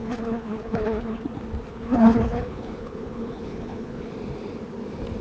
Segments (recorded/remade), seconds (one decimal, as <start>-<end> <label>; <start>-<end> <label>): 0.0-1.2 remade; 1.2-1.7 recorded; 1.7-4.1 remade; 4.1-5.2 recorded